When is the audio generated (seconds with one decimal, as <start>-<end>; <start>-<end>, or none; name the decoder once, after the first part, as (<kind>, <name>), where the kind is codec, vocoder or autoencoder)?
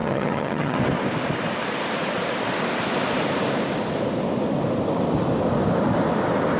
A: 0.0-0.8 (vocoder, HiFi-GAN)